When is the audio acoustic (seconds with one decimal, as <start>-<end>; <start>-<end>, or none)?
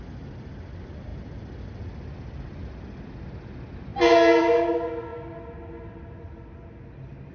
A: 0.0-7.3